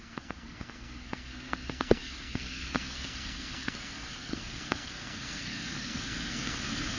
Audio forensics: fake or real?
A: fake